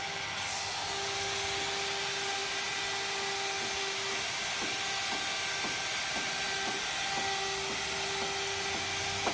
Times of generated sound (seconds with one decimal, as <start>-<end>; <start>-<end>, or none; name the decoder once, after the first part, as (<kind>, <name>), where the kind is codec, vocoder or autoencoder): none